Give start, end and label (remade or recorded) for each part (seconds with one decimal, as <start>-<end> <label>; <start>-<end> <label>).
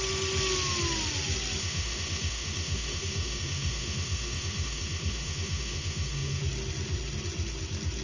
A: 0.0-1.6 recorded; 1.6-6.4 remade; 6.4-8.0 recorded